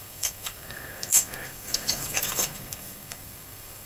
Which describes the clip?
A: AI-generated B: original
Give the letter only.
A